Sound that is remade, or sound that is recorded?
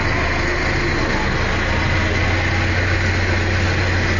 recorded